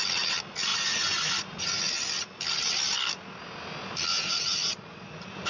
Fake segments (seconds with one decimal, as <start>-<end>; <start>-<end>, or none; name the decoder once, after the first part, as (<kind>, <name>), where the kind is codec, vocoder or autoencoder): 0.7-1.8 (vocoder, Vocos); 4.1-5.5